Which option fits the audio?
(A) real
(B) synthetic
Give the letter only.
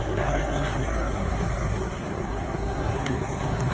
B